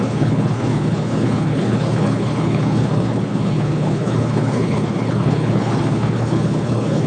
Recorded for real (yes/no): no